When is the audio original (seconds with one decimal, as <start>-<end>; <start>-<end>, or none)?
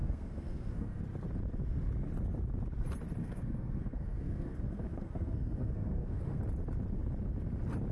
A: 1.0-3.2; 6.4-7.9